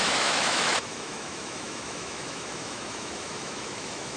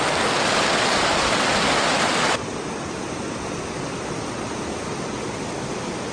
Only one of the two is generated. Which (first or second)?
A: first